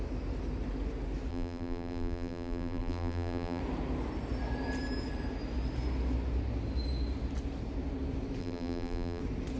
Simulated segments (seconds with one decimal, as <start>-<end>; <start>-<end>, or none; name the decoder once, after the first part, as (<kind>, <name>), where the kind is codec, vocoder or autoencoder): 1.3-3.6 (vocoder, BigVGAN v2); 8.4-9.2